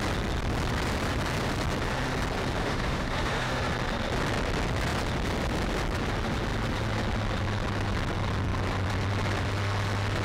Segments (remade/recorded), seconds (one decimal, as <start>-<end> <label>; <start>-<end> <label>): 0.0-2.6 recorded; 2.6-3.5 remade; 3.5-10.2 recorded